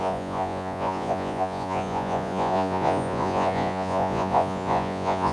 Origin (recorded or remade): remade